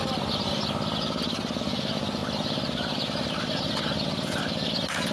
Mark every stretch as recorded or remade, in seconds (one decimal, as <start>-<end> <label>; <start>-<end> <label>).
0.0-5.1 recorded